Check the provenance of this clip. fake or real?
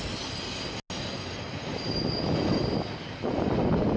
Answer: real